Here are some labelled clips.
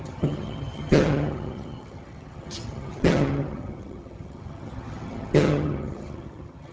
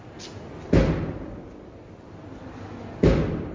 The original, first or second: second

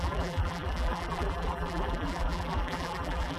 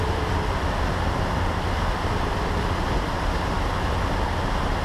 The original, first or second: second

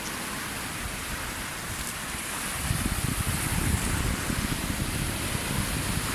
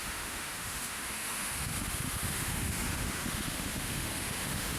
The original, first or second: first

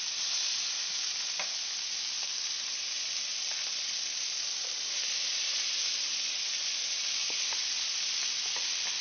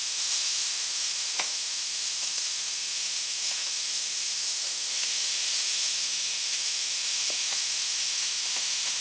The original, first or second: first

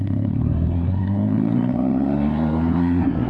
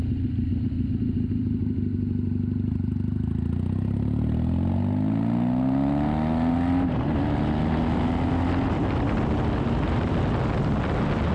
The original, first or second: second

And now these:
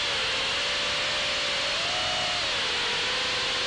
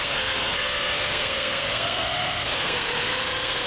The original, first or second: first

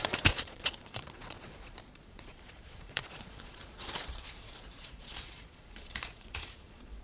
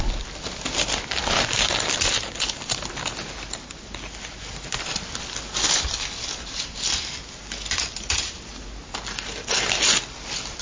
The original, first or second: second